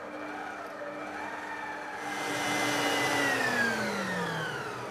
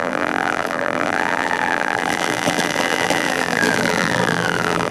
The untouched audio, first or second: first